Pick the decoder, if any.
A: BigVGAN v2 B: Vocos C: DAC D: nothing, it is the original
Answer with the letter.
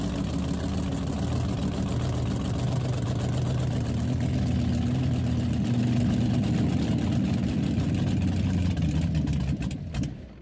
D